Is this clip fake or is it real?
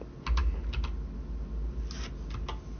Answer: real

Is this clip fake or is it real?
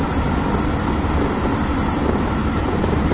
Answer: real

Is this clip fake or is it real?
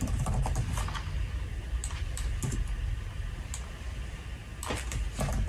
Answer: real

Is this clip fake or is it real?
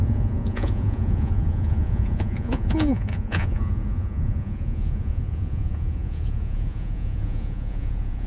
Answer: fake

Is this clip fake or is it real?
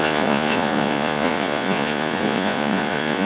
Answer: fake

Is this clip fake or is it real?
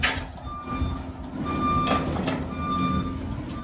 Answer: real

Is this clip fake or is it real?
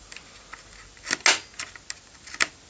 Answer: real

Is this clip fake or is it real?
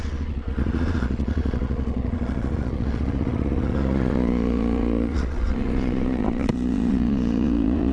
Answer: fake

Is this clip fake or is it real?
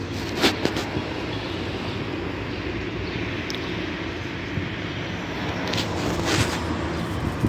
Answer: real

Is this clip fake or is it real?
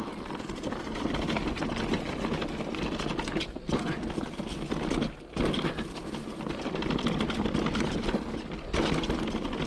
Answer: real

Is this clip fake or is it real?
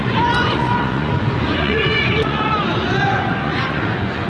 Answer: fake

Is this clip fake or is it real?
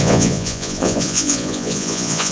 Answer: fake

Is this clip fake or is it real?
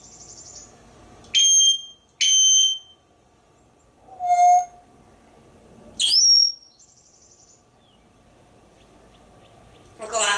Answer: real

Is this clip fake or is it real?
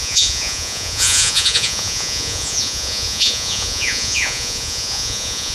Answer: fake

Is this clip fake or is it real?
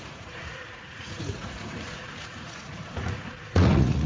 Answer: fake